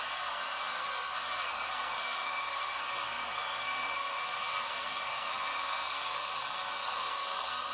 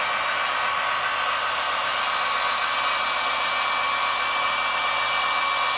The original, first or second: second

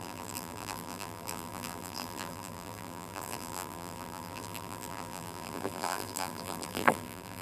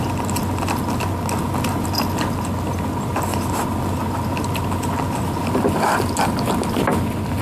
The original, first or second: second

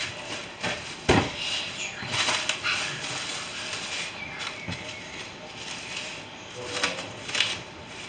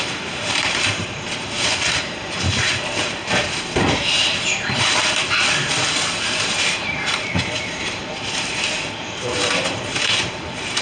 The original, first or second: first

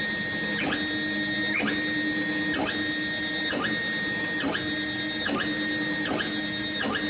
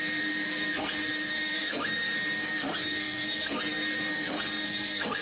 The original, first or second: first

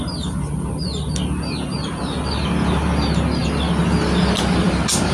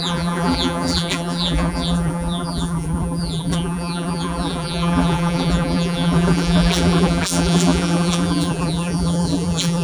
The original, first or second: first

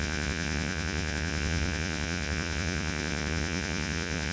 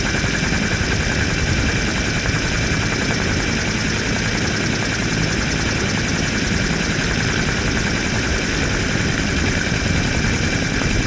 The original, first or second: second